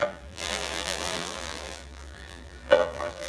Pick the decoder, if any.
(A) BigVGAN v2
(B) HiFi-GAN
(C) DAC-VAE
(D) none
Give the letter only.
A